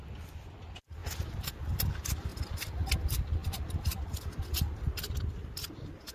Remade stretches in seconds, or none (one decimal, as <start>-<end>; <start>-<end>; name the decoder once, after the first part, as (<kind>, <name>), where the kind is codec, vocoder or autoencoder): none